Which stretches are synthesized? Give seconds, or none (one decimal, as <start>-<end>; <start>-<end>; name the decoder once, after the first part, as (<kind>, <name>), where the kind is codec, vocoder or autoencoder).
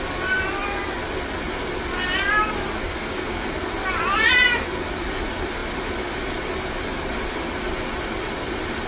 2.8-3.5 (codec, DAC)